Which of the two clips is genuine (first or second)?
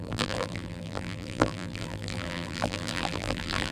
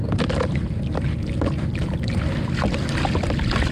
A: second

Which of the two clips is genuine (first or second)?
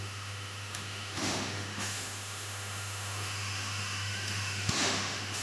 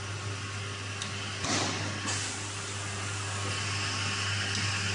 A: second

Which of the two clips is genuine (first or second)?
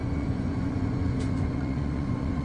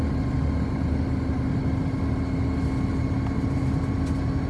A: second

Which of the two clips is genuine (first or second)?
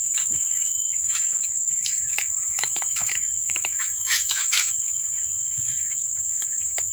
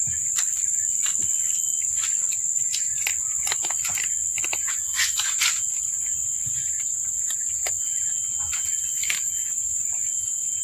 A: second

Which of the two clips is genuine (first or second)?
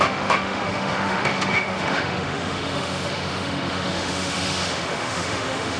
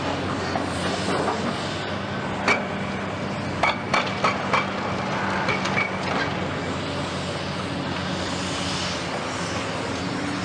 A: second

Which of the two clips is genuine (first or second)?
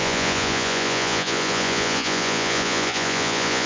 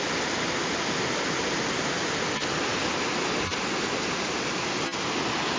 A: second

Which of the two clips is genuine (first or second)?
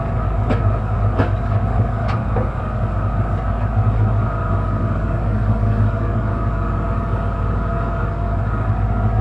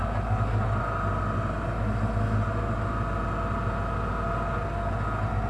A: second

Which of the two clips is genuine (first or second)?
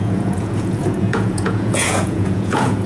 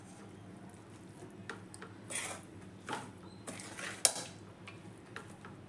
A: second